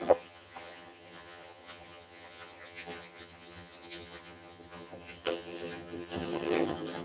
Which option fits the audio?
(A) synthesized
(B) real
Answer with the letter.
A